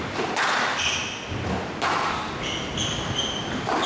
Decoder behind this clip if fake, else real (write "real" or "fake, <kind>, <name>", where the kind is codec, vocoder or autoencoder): real